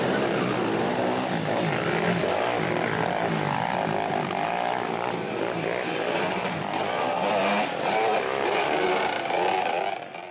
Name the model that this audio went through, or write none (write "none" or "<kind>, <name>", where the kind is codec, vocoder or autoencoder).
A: none